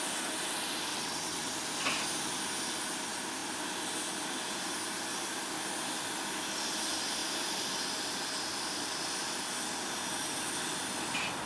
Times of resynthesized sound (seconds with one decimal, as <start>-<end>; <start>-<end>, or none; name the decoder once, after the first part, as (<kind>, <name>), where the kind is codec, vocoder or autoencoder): 0.9-1.5 (vocoder, WaveNeXt)